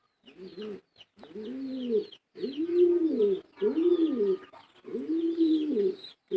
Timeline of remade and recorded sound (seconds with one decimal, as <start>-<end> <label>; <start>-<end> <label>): 0.0-6.4 recorded